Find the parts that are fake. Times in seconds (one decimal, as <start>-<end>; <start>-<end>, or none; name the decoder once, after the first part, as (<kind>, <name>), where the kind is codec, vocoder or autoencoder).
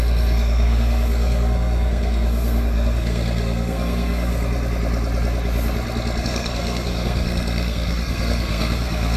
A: 0.0-4.3 (codec, SNAC); 6.2-9.2